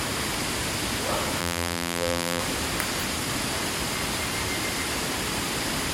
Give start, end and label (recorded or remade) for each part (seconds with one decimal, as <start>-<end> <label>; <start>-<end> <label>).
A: 0.0-1.4 recorded; 1.4-2.4 remade; 2.4-5.9 recorded